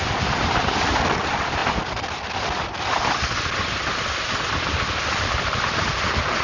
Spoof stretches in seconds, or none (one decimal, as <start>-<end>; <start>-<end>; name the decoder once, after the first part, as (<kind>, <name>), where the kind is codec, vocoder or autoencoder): none